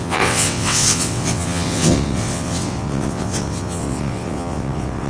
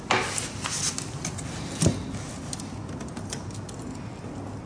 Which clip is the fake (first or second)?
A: first